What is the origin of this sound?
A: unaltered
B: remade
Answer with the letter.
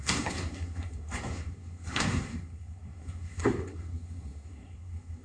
B